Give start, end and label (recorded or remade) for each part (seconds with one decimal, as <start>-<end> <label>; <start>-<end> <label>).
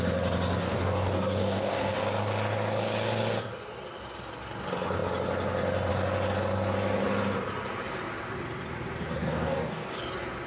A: 0.0-0.6 recorded; 0.6-2.0 remade; 2.0-9.2 recorded; 9.2-10.0 remade; 10.0-10.5 recorded